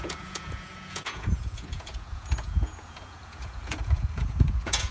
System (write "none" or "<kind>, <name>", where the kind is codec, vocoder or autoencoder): vocoder, Vocos